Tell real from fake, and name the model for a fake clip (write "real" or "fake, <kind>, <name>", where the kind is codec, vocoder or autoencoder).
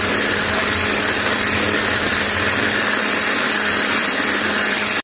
fake, vocoder, BigVGAN v2